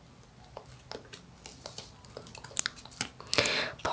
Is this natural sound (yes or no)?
yes